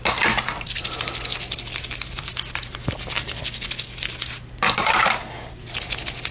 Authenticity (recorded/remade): recorded